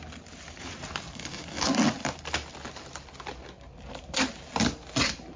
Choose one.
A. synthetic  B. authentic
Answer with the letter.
B